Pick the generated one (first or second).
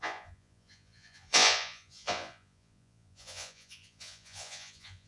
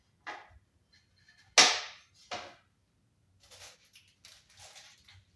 first